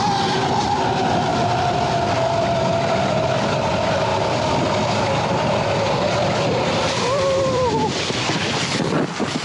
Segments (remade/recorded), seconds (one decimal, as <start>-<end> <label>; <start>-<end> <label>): 0.0-9.4 remade

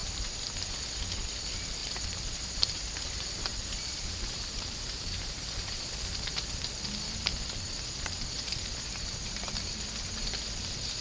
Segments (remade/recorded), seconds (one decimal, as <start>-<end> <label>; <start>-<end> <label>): 0.0-0.5 remade; 0.5-1.8 recorded; 1.8-5.9 remade; 5.9-7.3 recorded; 7.3-9.4 remade; 9.4-11.0 recorded

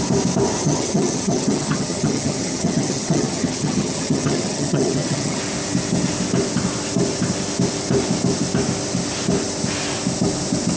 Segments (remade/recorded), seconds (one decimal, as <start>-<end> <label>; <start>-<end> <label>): 0.0-0.6 recorded; 0.6-5.4 remade; 5.4-10.8 recorded

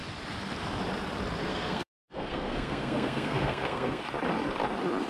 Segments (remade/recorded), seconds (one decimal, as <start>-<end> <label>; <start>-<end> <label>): 0.0-1.5 recorded; 1.5-4.0 remade; 4.0-5.1 recorded